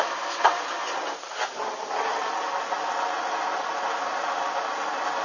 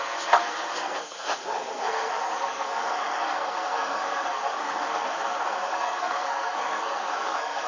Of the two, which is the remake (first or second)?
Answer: second